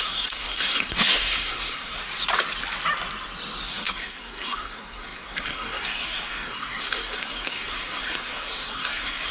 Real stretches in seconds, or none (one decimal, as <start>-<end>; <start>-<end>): 2.0-3.7